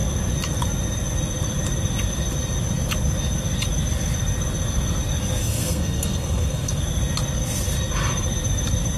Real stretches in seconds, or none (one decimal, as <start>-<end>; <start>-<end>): 0.0-5.4; 6.8-9.0

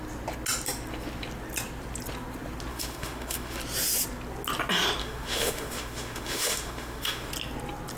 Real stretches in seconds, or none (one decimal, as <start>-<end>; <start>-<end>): 0.0-2.7; 3.6-5.0; 7.3-8.0

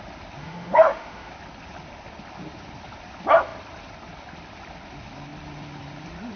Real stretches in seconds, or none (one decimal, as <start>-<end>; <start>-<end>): 0.0-0.4; 1.3-6.4

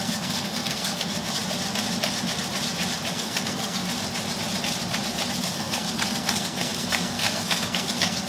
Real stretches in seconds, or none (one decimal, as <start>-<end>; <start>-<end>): 1.4-3.1; 3.8-5.4